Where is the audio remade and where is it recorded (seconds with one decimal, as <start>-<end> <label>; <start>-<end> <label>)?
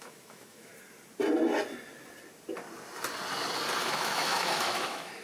0.0-0.7 remade; 0.7-3.8 recorded; 3.8-5.2 remade